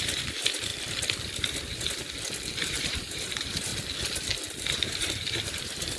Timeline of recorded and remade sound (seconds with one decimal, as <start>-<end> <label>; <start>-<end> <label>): 0.0-0.7 remade; 0.7-2.6 recorded; 2.6-3.7 remade; 3.7-4.8 recorded; 4.8-6.0 remade